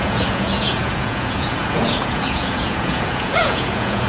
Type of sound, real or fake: fake